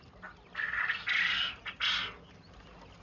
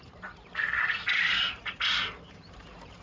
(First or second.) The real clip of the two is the first